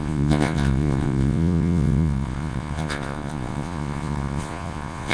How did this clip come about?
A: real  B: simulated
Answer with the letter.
B